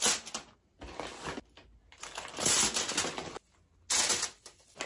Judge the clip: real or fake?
real